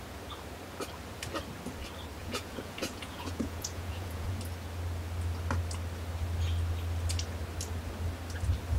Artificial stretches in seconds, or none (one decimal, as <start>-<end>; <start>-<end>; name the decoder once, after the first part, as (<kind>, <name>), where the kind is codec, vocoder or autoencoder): 2.2-4.4 (vocoder, Vocos)